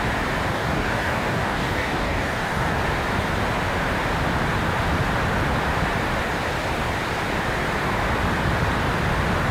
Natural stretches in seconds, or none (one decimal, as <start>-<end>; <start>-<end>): 0.0-0.5; 2.8-9.5